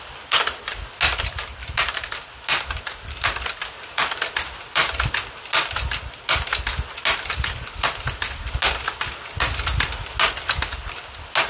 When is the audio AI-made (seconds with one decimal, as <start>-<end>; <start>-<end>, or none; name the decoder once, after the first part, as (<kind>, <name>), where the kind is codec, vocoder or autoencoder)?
1.6-2.1 (vocoder, BigVGAN v2)

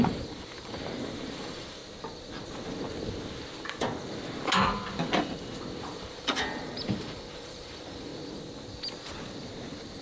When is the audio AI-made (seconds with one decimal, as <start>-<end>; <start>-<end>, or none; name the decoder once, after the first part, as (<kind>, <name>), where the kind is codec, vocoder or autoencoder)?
0.0-1.8 (vocoder, BigVGAN v2); 5.8-8.1

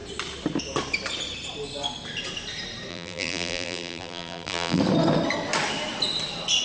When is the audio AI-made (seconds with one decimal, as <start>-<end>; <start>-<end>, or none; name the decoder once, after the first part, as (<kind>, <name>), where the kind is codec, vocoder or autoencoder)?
2.9-4.8 (vocoder, BigVGAN v2)

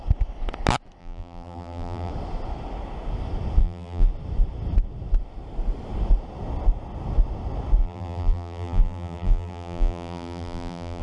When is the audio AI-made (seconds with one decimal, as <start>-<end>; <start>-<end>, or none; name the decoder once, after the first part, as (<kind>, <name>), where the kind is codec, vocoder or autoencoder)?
1.0-2.1 (vocoder, BigVGAN v2); 3.6-4.1; 7.8-11.0

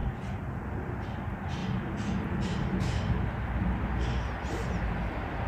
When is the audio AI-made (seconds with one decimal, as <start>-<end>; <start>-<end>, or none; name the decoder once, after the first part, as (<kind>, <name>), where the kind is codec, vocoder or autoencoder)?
none

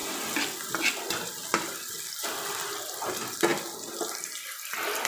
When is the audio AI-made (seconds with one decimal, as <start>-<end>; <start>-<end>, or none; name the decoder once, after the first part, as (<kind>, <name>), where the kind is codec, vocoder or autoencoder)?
3.5-4.3 (vocoder, BigVGAN v2)

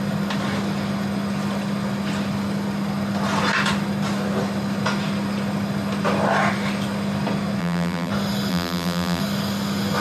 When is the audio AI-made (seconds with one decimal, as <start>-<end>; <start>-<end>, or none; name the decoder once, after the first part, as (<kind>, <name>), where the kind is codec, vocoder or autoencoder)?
7.6-8.1 (vocoder, BigVGAN v2); 8.5-9.2

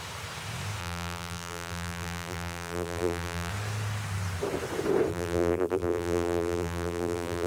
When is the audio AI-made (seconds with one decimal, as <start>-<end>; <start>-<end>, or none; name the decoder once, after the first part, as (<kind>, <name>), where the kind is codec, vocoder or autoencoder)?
0.8-3.5 (vocoder, BigVGAN v2); 5.1-7.5